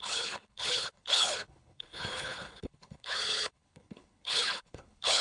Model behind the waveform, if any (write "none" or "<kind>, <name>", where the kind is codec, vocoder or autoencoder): codec, HILCodec